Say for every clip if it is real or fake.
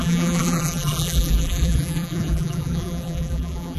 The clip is fake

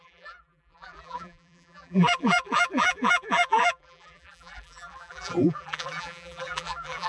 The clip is fake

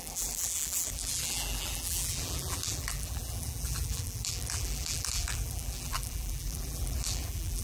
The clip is fake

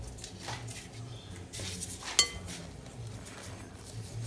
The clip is real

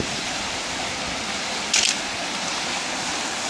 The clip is real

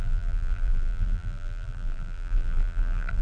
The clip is fake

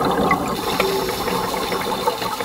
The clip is real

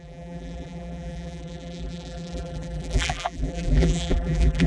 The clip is fake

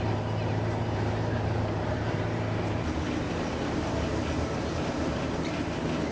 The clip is fake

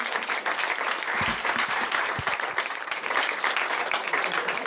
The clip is fake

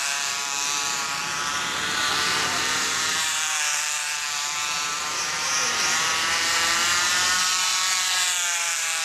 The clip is fake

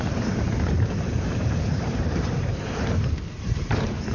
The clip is fake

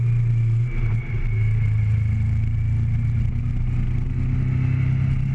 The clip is real